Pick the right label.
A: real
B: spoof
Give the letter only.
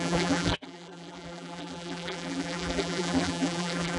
B